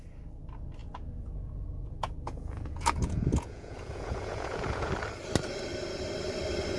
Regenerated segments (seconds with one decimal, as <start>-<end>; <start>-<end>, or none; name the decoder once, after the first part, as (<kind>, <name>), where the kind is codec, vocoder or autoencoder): 0.8-4.9 (vocoder, Vocos)